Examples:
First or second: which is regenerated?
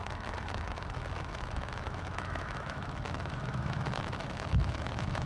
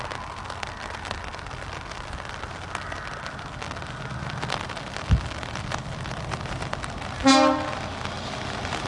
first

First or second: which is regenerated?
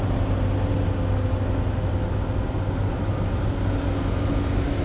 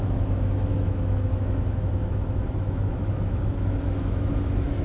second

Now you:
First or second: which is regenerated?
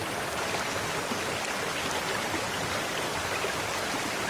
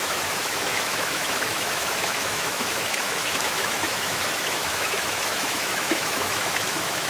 second